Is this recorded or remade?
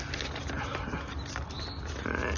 recorded